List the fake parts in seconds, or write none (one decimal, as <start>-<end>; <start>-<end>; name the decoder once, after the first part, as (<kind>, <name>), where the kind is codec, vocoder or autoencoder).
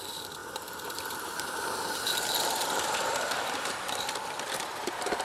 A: 0.4-3.5 (vocoder, BigVGAN v2)